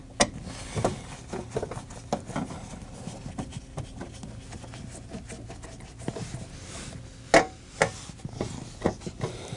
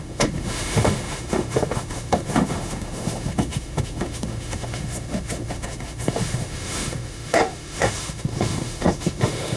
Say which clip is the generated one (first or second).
second